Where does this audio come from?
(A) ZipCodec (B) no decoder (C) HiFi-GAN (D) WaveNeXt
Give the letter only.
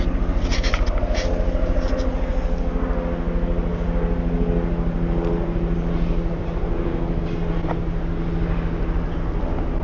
B